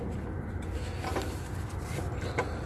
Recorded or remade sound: recorded